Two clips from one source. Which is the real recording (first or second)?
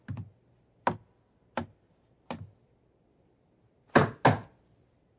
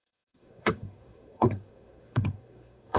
first